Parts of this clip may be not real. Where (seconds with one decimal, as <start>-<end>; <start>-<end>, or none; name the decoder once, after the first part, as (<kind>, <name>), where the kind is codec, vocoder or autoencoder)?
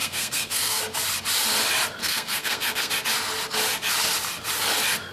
0.0-0.8 (codec, SNAC); 2.0-2.9